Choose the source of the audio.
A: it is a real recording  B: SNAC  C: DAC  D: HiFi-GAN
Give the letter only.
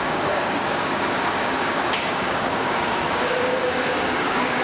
C